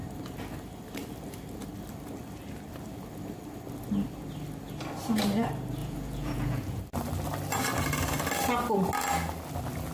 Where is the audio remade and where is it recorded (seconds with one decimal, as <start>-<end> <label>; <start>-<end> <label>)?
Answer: 0.0-5.8 recorded; 5.8-6.8 remade; 6.8-9.9 recorded